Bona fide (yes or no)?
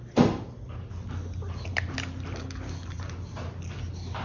yes